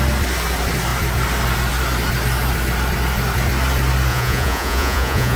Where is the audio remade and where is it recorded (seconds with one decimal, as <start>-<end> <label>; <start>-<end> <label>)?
0.0-4.1 recorded; 4.1-5.4 remade